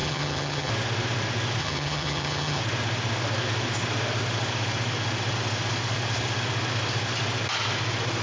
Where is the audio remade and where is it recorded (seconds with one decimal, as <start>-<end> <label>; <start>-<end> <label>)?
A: 0.0-0.7 remade; 0.7-1.6 recorded; 1.6-2.6 remade; 2.6-8.2 recorded